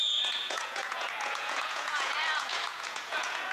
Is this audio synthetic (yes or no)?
yes